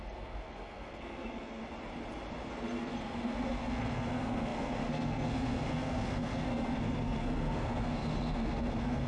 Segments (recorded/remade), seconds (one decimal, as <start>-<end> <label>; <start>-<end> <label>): 0.0-1.6 remade; 1.6-2.5 recorded; 2.5-9.1 remade